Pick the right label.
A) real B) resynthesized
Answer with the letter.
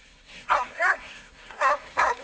B